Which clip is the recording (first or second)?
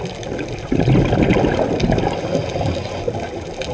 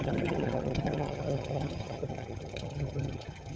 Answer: first